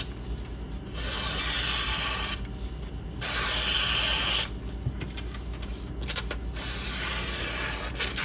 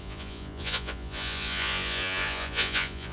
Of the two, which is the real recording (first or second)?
first